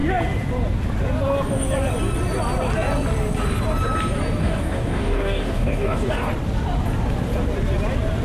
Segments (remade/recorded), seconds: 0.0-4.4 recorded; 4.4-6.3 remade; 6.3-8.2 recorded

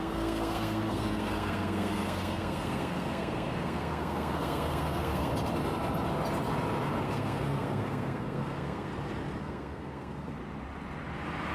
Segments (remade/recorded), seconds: 0.0-5.3 remade; 5.3-6.9 recorded; 6.9-8.9 remade; 8.9-9.4 recorded; 9.4-10.4 remade; 10.4-11.5 recorded